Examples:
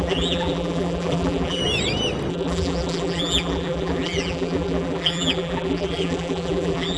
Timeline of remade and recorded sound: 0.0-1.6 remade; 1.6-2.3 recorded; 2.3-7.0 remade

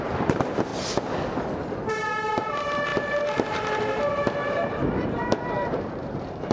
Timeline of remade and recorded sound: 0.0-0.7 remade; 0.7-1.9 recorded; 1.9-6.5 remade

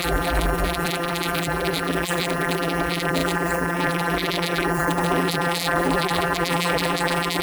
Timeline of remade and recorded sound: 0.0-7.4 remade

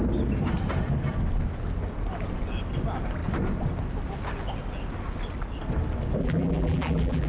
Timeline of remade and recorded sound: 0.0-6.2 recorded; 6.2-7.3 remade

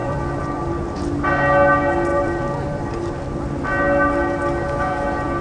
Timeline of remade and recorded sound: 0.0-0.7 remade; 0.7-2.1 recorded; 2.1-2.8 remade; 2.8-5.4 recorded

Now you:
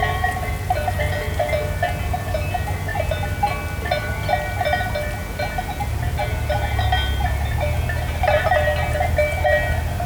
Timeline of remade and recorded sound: 0.0-10.1 recorded

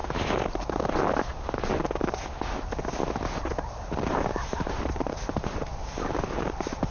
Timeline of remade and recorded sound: 0.0-4.1 recorded; 4.1-6.9 remade